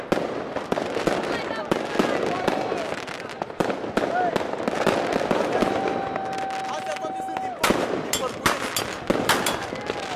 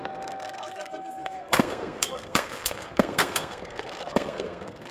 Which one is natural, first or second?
first